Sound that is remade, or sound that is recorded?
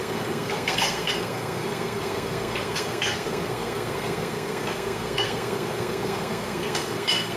remade